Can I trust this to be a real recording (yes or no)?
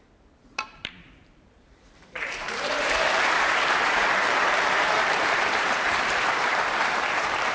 no